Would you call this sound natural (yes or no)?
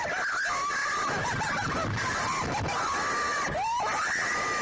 yes